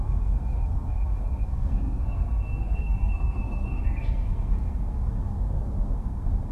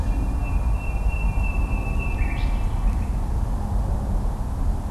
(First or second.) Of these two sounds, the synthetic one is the first